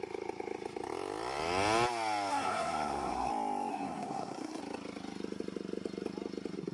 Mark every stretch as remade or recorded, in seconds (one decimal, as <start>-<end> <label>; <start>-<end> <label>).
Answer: 0.0-2.3 recorded; 2.3-3.3 remade; 3.3-3.7 recorded; 3.7-4.6 remade; 4.6-6.7 recorded

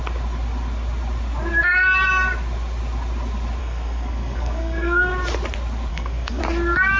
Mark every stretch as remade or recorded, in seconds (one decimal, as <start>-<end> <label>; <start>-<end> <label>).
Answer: 0.0-3.6 recorded; 3.6-5.1 remade; 5.1-5.9 recorded; 5.9-6.4 remade; 6.4-7.0 recorded

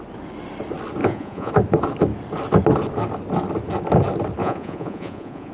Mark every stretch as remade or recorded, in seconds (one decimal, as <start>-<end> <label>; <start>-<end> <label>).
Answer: 0.0-1.0 recorded; 1.0-1.5 remade; 1.5-4.4 recorded; 4.4-5.5 remade

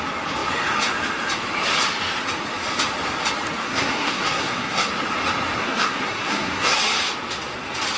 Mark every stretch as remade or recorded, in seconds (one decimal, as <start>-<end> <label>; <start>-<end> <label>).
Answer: 0.0-3.6 recorded; 3.6-4.9 remade; 4.9-5.6 recorded; 5.6-6.8 remade; 6.8-8.0 recorded

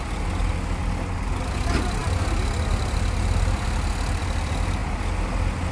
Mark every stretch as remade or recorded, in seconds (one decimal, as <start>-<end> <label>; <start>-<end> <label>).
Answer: 0.0-5.7 recorded

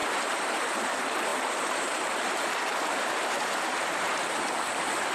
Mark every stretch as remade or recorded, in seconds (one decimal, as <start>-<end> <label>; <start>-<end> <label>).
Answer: 0.0-0.6 remade; 0.6-1.3 recorded; 1.3-4.4 remade; 4.4-5.1 recorded

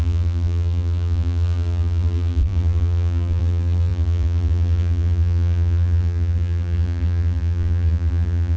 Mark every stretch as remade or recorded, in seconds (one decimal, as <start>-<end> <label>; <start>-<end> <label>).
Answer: 0.0-8.6 remade

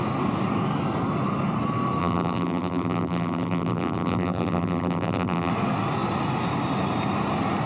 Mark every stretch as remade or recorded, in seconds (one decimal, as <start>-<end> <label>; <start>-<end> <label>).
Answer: 0.0-2.0 recorded; 2.0-5.5 remade; 5.5-7.7 recorded